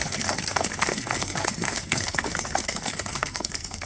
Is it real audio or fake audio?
fake